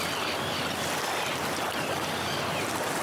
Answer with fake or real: real